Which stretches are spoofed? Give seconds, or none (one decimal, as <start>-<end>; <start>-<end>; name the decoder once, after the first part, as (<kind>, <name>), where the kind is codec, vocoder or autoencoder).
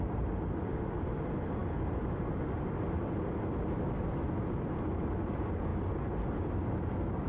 none